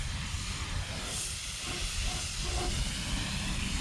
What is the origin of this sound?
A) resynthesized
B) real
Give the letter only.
B